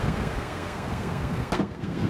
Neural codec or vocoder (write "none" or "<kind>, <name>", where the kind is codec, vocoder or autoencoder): codec, SNAC